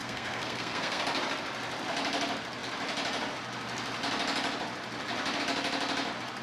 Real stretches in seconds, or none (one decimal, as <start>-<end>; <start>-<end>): 1.0-6.4